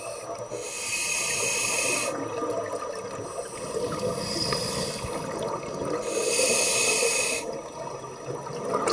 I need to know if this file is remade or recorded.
recorded